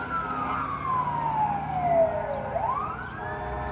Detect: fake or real real